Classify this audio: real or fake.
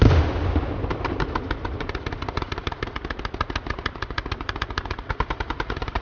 real